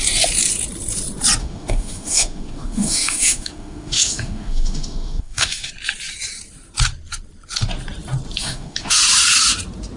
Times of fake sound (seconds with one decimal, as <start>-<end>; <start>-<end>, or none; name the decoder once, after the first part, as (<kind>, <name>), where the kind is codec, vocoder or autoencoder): 1.4-5.7 (autoencoder, DAC-VAE); 8.4-9.0